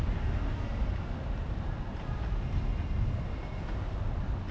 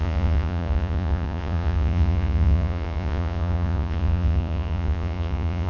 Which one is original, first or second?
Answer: first